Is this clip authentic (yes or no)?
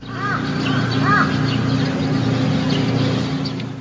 yes